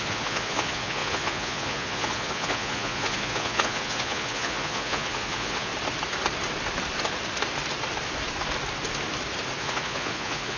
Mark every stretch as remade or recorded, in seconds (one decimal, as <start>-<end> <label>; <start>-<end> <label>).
0.0-5.7 remade; 5.7-9.6 recorded; 9.6-10.6 remade